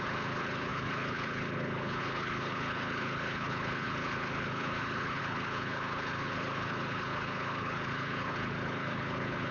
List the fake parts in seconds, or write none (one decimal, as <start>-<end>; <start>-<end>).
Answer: 0.0-9.5